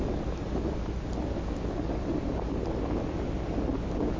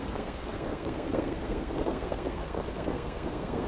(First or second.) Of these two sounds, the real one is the first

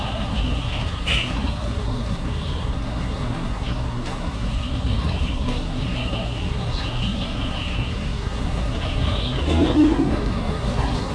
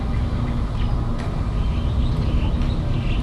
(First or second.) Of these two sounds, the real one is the second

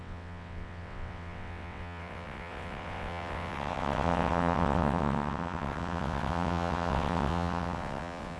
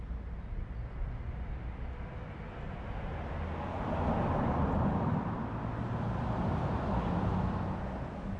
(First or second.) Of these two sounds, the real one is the second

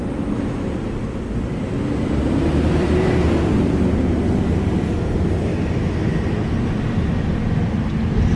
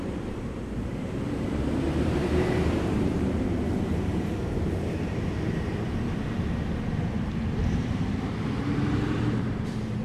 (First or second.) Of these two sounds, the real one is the first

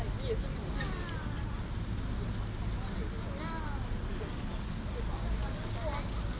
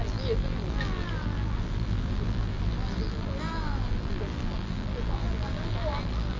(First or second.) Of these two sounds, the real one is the first